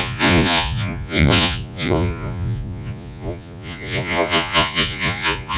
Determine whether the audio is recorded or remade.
remade